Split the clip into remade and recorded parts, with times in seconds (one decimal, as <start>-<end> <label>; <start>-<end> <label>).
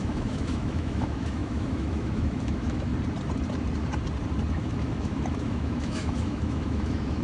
0.0-2.9 remade; 2.9-4.5 recorded; 4.5-7.2 remade